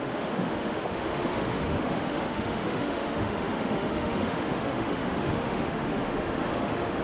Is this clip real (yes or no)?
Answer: no